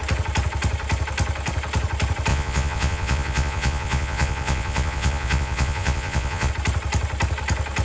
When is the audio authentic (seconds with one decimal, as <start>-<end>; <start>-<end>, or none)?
0.0-2.3; 6.5-7.8